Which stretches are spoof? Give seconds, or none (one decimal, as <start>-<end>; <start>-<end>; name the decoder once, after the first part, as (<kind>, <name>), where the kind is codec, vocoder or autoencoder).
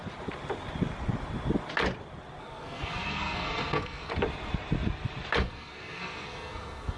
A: 2.4-4.1 (codec, SNAC); 5.4-7.0